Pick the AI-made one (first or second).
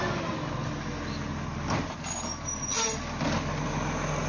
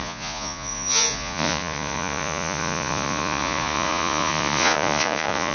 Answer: second